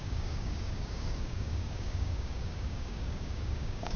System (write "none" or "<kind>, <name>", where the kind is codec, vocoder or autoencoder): codec, DAC